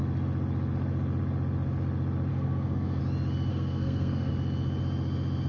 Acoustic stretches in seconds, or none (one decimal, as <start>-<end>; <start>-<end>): 0.0-2.3; 3.0-3.5; 4.3-5.5